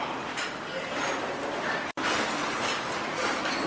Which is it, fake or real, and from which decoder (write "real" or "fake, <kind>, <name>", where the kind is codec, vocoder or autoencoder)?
real